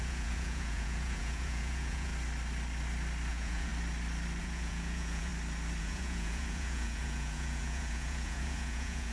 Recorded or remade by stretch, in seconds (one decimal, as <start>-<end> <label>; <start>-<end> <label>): 0.0-2.1 remade; 2.1-3.3 recorded; 3.3-3.7 remade; 3.7-4.4 recorded; 4.4-5.3 remade; 5.3-5.8 recorded; 5.8-9.1 remade